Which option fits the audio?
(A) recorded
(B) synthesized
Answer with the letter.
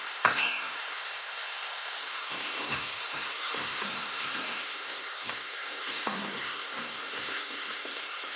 B